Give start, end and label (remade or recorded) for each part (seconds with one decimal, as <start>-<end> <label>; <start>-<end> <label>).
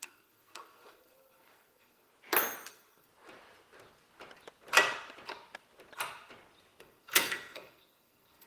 0.0-2.1 remade; 2.1-2.7 recorded; 2.7-3.1 remade; 3.1-6.8 recorded; 6.8-8.5 remade